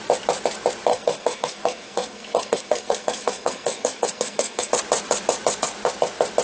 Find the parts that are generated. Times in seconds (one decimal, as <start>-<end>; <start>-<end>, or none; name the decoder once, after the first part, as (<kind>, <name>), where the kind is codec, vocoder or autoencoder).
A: 0.9-4.7 (codec, SNAC)